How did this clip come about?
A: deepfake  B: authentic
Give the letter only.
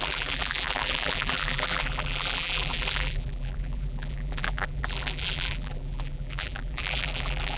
A